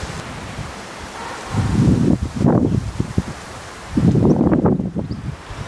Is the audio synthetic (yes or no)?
yes